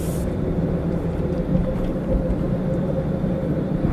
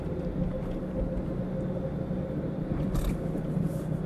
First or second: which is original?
second